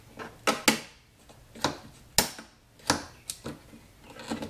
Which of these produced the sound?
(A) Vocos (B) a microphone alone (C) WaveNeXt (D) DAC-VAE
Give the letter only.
B